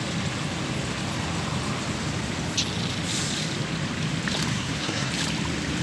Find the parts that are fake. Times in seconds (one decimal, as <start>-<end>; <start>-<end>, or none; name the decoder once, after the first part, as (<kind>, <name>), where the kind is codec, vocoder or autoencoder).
4.5-5.1 (codec, SNAC)